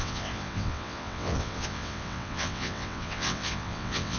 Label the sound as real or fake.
fake